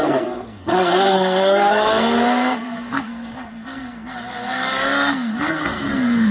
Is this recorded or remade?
remade